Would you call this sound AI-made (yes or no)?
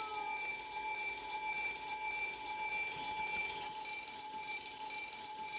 no